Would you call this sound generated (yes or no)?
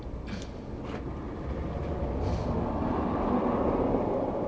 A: no